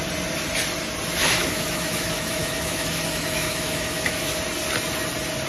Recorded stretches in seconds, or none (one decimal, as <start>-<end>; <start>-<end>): 0.0-1.2; 4.4-5.5